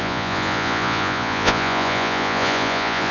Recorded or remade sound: remade